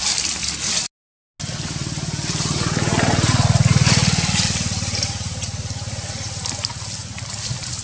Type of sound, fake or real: real